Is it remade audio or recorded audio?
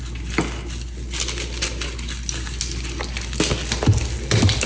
recorded